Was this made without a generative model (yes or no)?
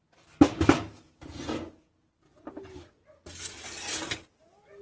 yes